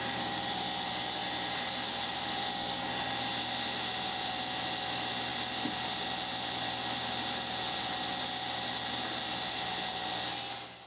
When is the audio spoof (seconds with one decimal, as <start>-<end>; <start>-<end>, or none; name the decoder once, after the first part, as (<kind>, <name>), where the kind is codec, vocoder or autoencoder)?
none